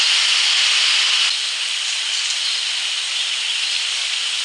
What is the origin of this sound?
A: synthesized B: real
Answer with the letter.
B